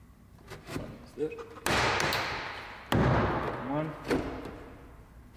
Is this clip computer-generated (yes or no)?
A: no